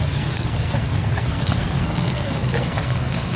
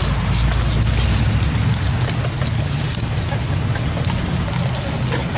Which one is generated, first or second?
first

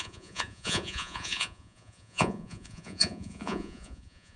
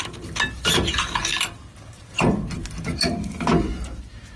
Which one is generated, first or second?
first